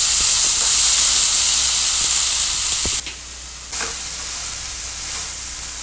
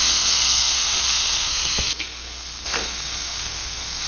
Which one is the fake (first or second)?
second